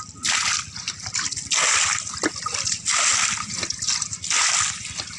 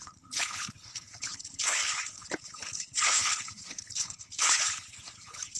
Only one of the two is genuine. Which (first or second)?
first